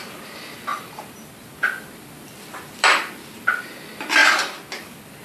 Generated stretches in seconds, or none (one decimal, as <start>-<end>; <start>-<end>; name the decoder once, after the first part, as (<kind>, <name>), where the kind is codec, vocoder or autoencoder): 0.7-3.6 (vocoder, BigVGAN v2)